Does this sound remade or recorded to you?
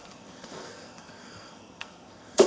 remade